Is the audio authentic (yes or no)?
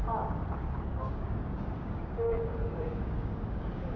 no